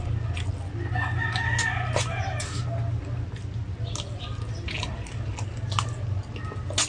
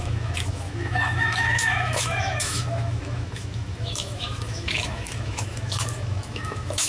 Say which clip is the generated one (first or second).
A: second